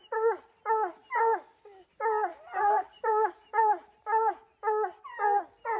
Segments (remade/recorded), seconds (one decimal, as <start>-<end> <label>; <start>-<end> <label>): 0.0-2.3 recorded; 2.3-4.3 remade; 4.3-5.8 recorded